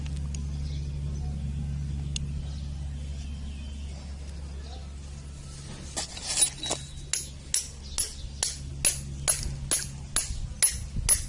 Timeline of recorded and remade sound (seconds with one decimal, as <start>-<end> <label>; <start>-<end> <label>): 0.0-11.3 recorded